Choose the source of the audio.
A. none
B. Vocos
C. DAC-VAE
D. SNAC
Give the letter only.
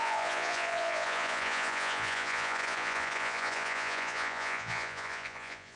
B